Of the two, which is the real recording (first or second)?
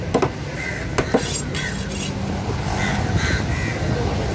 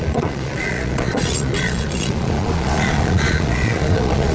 first